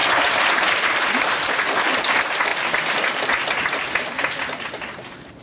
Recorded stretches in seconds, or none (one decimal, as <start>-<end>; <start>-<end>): 0.0-5.4